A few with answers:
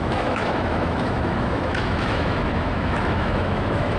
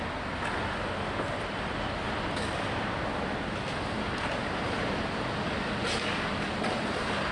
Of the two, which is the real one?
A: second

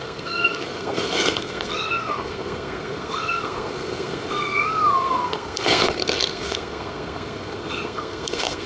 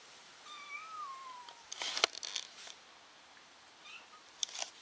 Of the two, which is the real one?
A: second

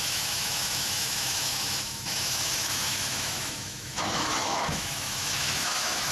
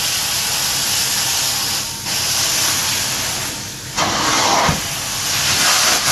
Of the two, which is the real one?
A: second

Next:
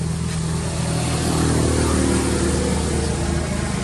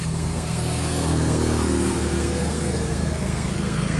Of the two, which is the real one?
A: first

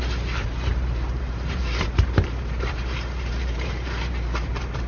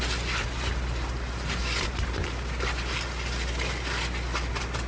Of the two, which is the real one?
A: second